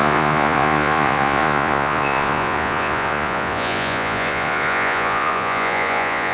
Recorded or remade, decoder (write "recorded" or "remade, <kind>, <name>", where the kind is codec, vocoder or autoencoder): remade, vocoder, Vocos